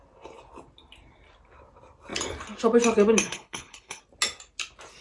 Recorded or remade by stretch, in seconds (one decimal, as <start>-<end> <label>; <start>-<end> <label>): 0.0-3.2 recorded; 3.2-4.0 remade; 4.0-5.0 recorded